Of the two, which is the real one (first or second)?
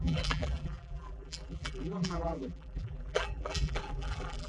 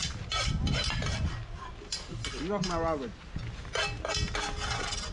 second